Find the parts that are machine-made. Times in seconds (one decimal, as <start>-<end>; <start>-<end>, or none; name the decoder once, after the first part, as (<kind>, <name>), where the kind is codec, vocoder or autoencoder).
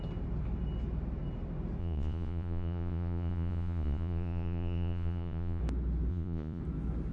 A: 1.8-5.6 (vocoder, Vocos); 6.1-6.6